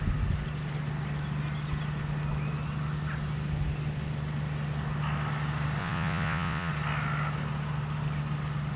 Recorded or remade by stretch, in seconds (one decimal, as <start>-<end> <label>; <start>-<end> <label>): 0.0-5.8 recorded; 5.8-6.7 remade; 6.7-8.8 recorded